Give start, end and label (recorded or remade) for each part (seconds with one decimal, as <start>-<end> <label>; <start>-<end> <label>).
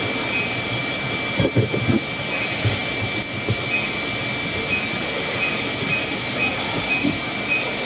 0.0-7.9 recorded